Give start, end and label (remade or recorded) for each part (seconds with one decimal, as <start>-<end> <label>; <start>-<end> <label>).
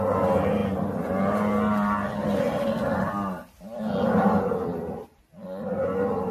0.0-6.3 recorded